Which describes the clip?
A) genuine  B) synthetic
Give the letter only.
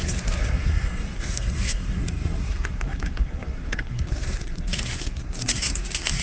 B